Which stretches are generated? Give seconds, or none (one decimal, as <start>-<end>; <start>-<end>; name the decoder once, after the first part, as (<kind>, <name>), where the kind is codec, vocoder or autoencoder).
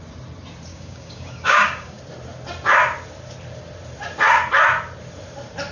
0.7-2.0 (codec, DAC)